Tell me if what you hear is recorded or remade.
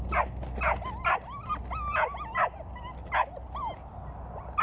recorded